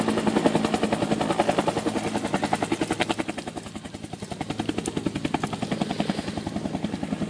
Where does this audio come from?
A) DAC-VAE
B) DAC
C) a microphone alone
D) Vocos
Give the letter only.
C